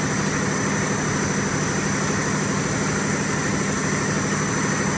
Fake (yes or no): no